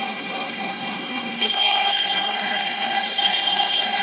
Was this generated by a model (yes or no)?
yes